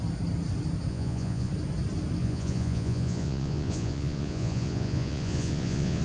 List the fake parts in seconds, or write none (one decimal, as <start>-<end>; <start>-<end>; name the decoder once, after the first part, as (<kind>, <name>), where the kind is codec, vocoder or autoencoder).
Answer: 0.9-1.5 (vocoder, Vocos); 2.2-6.0